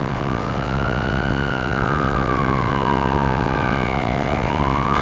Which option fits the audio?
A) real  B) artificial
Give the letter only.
B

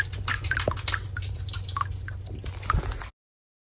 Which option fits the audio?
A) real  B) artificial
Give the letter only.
A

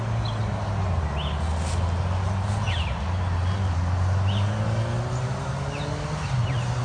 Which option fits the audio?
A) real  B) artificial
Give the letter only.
A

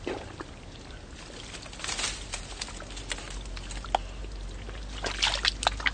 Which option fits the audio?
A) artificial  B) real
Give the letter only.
B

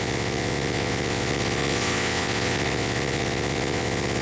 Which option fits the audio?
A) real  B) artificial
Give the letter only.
B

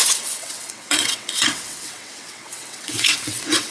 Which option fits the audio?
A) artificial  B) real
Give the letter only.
A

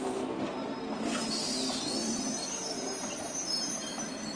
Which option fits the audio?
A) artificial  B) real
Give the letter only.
B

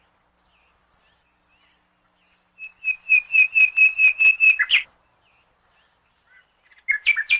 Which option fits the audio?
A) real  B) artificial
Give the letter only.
A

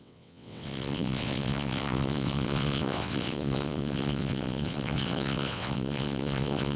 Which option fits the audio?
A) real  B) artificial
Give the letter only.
B